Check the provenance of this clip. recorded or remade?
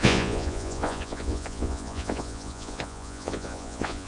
remade